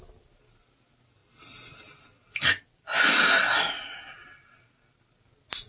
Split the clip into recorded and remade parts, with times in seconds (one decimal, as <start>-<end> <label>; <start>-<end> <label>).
0.0-5.7 recorded